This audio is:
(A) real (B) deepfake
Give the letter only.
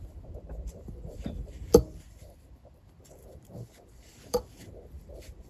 B